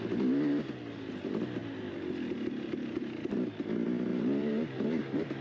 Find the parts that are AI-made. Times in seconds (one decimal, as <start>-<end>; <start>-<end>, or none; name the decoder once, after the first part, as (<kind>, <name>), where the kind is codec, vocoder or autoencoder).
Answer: 4.1-5.0 (vocoder, BigVGAN v2)

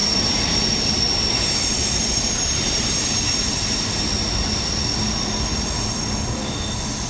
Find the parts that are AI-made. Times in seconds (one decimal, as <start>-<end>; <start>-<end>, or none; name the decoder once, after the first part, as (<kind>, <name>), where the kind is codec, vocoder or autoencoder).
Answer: 0.0-4.0 (vocoder, BigVGAN v2)

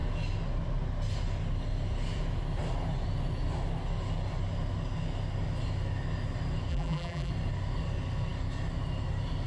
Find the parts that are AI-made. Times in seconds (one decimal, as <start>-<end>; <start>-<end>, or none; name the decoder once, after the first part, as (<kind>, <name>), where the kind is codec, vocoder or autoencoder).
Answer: 6.7-7.3 (vocoder, BigVGAN v2)

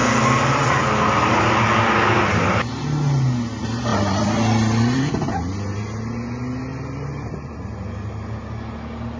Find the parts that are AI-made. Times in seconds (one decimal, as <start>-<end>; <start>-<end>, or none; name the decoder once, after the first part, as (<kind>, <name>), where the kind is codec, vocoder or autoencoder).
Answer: 3.9-5.3 (vocoder, BigVGAN v2); 6.7-7.5

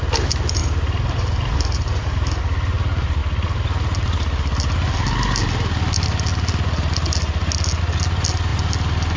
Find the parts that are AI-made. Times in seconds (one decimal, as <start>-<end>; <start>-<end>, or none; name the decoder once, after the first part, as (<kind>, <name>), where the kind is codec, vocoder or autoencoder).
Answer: 0.6-2.4 (vocoder, BigVGAN v2)

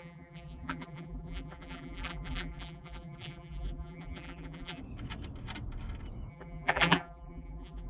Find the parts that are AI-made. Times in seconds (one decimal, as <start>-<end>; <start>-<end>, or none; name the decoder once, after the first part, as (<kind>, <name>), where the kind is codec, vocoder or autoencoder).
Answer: 0.0-4.8 (vocoder, BigVGAN v2); 6.3-7.9

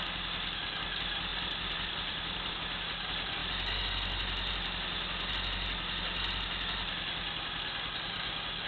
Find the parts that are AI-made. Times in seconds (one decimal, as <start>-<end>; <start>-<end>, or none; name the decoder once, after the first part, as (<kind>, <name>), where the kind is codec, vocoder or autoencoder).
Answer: 1.3-2.5 (vocoder, BigVGAN v2)

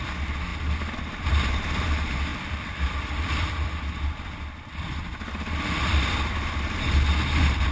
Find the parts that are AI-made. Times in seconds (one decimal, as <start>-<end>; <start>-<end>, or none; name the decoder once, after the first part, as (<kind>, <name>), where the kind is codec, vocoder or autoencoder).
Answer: 2.3-6.8 (vocoder, BigVGAN v2)